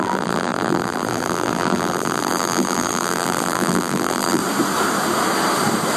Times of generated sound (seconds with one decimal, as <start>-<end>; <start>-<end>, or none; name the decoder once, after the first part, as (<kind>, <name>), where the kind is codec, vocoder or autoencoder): 0.0-4.4 (vocoder, BigVGAN v2)